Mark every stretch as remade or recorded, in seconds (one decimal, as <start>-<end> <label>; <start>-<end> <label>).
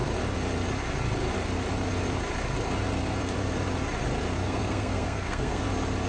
0.0-4.4 recorded; 4.4-5.6 remade; 5.6-6.1 recorded